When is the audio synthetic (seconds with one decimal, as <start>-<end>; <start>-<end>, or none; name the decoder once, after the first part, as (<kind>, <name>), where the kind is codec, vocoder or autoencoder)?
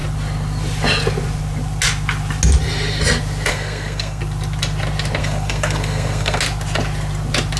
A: 3.5-4.2 (codec, SNAC); 5.2-6.4